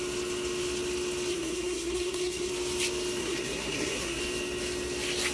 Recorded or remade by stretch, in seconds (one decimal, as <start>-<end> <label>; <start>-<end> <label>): 0.0-1.3 recorded; 1.3-2.5 remade; 2.5-3.2 recorded; 3.2-4.2 remade; 4.2-5.3 recorded